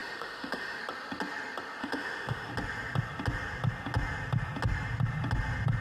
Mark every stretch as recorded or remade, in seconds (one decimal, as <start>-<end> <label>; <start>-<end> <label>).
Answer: 0.0-0.8 remade; 0.8-1.8 recorded; 1.8-2.5 remade; 2.5-5.8 recorded